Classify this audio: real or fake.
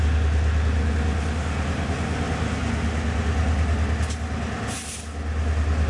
real